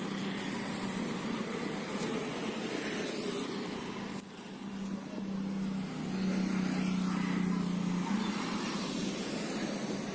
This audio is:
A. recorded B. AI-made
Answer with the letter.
A